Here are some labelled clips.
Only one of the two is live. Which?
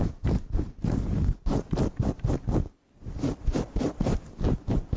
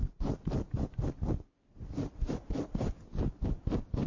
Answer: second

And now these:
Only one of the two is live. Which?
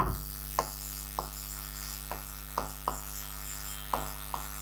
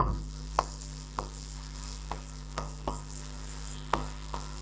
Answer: first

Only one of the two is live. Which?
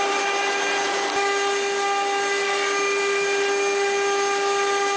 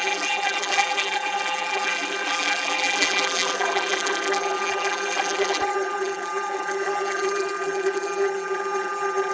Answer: first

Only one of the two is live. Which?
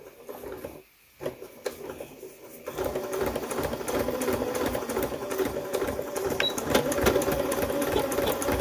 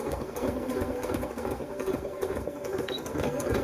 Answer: first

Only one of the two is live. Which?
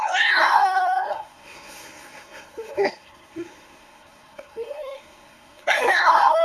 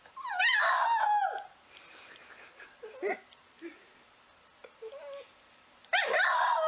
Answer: second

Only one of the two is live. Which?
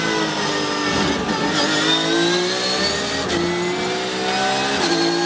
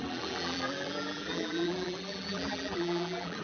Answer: first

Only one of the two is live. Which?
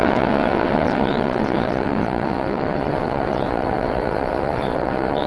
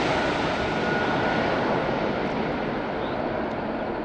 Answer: second